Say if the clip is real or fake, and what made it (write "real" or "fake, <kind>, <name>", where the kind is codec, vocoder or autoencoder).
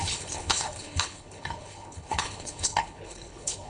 fake, codec, HILCodec